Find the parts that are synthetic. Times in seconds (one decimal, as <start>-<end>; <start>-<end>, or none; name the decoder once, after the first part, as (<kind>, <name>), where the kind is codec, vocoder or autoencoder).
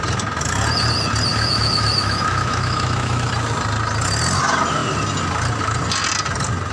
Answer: 1.3-3.3 (autoencoder, DAC-VAE)